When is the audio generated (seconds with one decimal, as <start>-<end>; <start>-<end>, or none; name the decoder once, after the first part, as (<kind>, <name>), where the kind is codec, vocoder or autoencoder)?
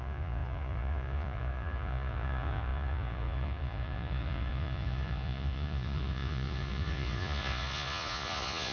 0.0-8.7 (vocoder, Vocos)